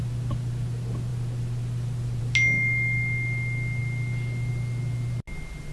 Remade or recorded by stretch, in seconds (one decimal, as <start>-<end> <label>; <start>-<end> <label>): 0.0-5.7 recorded